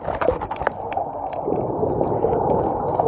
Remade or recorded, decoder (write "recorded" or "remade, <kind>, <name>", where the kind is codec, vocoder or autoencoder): remade, vocoder, BigVGAN v2